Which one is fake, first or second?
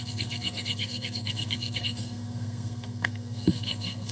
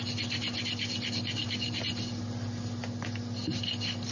first